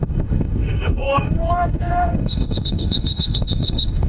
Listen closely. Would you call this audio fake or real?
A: fake